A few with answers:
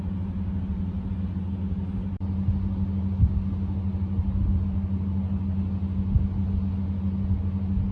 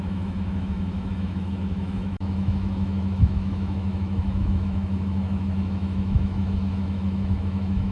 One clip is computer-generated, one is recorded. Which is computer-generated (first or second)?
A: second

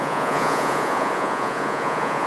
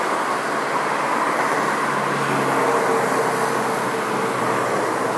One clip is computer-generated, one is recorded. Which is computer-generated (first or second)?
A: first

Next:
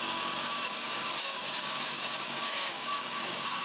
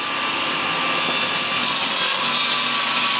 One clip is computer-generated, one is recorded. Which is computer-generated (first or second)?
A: first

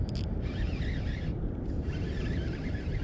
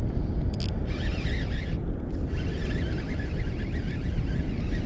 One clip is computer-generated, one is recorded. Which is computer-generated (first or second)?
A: first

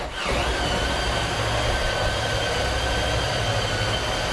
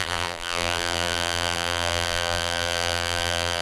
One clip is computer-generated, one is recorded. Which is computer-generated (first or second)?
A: second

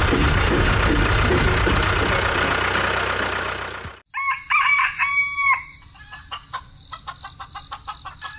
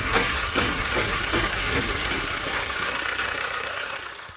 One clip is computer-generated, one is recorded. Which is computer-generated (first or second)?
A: second